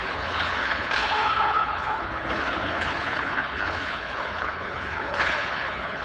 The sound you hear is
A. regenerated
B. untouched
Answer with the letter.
A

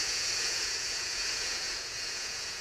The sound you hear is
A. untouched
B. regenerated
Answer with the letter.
B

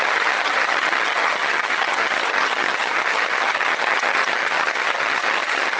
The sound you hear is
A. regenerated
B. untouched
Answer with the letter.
A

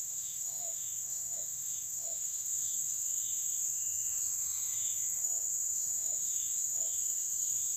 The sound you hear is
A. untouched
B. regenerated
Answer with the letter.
B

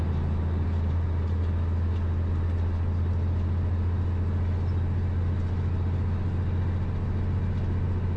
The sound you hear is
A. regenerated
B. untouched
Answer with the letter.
B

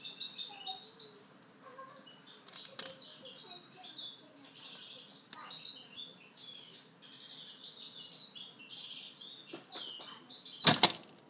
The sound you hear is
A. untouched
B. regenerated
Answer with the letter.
A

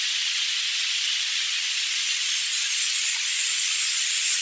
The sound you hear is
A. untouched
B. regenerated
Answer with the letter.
B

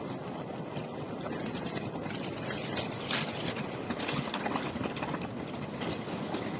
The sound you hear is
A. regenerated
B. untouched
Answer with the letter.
B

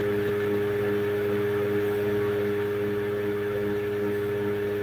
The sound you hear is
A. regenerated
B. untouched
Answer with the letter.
B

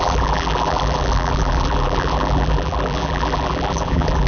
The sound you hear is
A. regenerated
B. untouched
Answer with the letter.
A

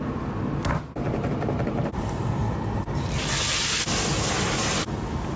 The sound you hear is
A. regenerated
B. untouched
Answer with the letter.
B